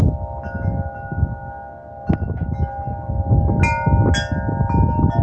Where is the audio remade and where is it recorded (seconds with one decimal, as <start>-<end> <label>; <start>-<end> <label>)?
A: 0.0-5.2 recorded